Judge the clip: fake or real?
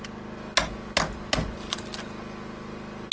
real